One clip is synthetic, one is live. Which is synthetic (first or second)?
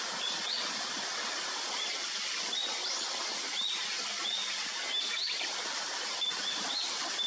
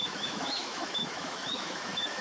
second